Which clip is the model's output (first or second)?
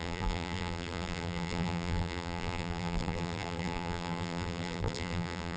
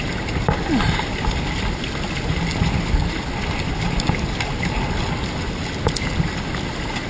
first